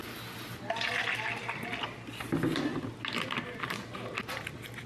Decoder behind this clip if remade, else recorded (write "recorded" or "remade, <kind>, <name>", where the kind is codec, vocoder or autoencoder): recorded